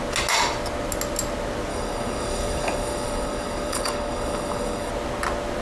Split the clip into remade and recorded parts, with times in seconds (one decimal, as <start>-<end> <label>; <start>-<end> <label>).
0.0-1.7 recorded; 1.7-4.9 remade; 4.9-5.6 recorded